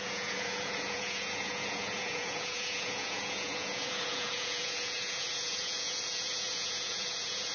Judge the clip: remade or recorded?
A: remade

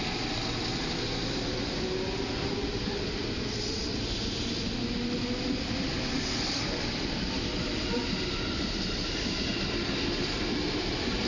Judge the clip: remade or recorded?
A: recorded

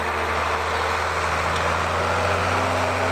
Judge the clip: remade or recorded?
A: recorded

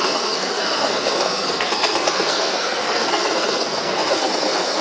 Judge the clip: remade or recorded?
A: remade